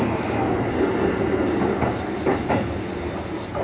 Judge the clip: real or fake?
real